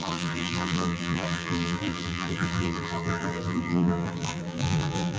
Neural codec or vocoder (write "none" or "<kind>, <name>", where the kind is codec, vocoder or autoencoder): vocoder, BigVGAN v2